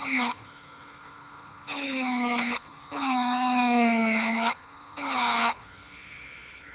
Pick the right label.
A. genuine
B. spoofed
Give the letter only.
B